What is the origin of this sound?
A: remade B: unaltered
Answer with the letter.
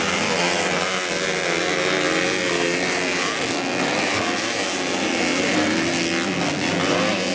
B